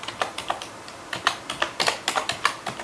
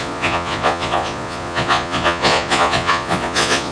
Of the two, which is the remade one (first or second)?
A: second